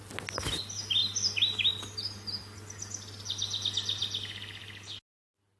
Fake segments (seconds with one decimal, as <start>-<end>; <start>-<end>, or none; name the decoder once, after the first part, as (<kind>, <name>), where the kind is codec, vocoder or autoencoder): none